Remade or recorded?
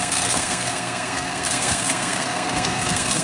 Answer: remade